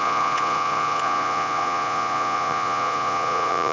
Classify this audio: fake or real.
fake